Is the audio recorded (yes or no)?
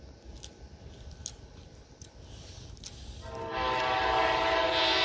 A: yes